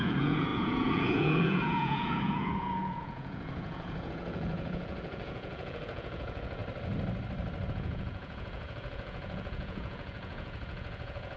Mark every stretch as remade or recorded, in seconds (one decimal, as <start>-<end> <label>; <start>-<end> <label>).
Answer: 0.0-6.6 remade; 6.6-7.7 recorded; 7.7-11.4 remade